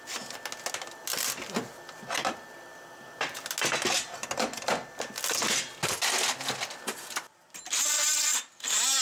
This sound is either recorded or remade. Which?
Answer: recorded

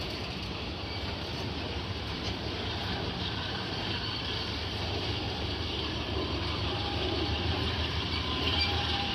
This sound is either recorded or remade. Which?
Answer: remade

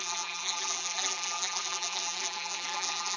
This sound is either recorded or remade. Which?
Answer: remade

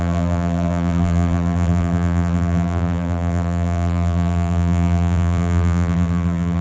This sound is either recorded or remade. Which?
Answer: remade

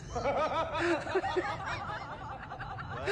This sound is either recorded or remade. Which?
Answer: recorded